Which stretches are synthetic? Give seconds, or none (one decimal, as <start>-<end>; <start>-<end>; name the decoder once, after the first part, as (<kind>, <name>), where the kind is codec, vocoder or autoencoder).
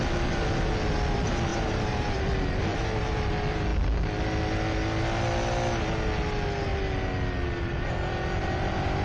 1.5-2.2 (vocoder, BigVGAN v2); 2.7-3.3